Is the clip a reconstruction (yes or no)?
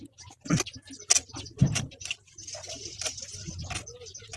no